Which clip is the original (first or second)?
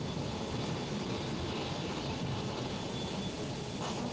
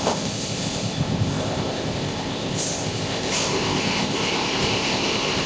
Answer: first